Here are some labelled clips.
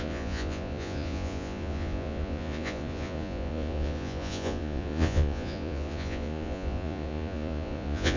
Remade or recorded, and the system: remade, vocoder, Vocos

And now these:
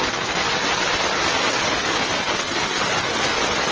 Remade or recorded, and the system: recorded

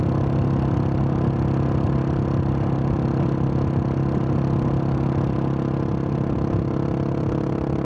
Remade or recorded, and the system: recorded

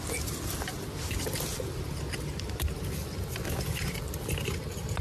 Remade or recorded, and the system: recorded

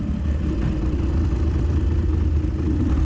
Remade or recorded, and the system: recorded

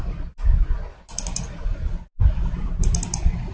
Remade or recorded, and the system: recorded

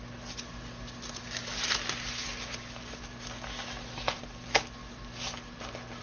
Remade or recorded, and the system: recorded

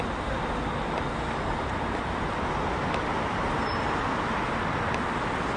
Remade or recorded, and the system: recorded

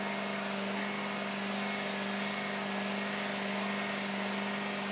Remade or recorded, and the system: recorded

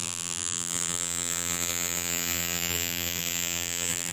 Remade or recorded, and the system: remade, vocoder, BigVGAN v2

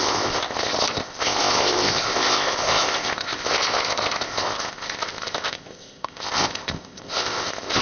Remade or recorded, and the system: remade, codec, ZipCodec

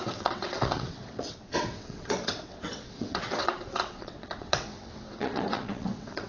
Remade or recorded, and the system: remade, vocoder, WaveNeXt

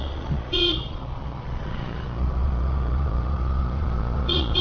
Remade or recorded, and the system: remade, vocoder, Vocos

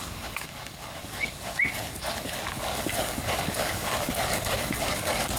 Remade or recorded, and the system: remade, codec, DAC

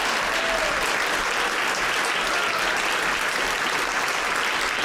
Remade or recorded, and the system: recorded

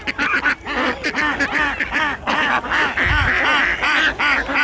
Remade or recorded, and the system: recorded